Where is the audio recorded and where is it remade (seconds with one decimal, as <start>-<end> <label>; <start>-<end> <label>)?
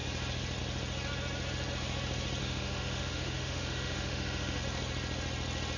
0.0-2.4 recorded; 2.4-4.6 remade; 4.6-5.8 recorded